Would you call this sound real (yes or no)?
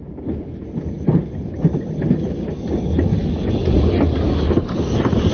yes